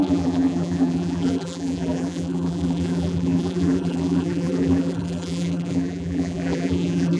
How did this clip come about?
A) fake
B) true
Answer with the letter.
A